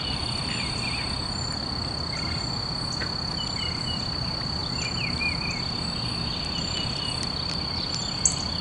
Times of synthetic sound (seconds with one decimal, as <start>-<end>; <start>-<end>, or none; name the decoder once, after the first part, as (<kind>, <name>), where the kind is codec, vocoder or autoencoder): none